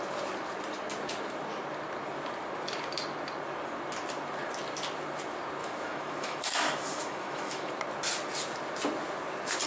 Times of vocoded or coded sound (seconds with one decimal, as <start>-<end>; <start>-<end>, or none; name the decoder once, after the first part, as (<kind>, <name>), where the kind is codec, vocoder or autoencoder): 5.6-7.7 (autoencoder, DAC-VAE)

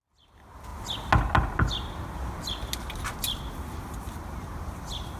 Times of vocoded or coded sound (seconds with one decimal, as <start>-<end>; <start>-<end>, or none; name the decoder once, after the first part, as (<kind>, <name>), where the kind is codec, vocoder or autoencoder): none

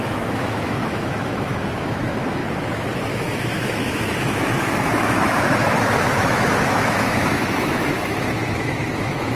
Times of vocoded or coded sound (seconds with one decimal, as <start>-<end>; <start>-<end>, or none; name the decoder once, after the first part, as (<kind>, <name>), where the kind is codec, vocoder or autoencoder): 0.0-2.4 (autoencoder, DAC-VAE); 3.1-9.4